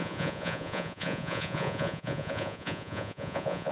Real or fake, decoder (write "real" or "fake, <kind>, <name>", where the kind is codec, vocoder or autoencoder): fake, vocoder, Vocos